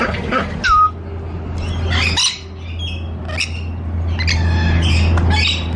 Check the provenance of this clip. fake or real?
real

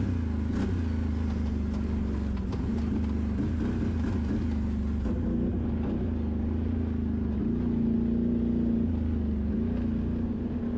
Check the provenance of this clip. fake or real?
real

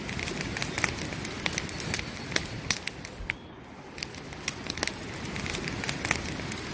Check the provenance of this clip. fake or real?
real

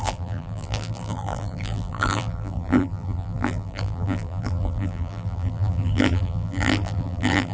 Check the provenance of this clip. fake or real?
fake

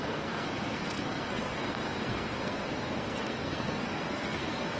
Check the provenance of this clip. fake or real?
fake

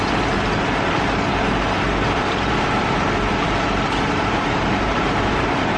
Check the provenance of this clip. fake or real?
fake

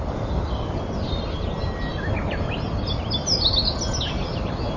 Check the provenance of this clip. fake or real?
real